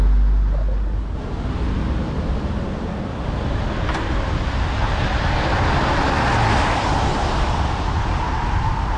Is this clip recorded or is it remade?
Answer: recorded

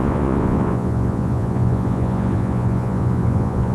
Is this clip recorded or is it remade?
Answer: remade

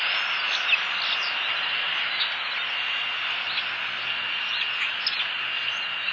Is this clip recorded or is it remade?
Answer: recorded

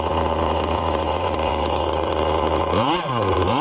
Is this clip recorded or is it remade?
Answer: remade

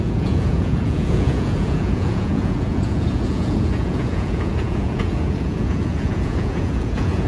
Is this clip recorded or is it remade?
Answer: remade